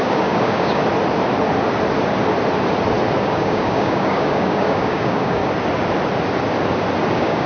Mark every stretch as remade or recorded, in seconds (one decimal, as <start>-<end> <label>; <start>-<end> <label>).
0.0-0.8 remade; 0.8-3.2 recorded; 3.2-5.4 remade; 5.4-7.1 recorded; 7.1-7.5 remade